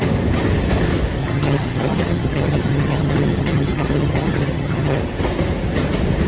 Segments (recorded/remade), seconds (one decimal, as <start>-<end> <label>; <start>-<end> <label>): 0.0-1.2 recorded; 1.2-5.0 remade; 5.0-6.3 recorded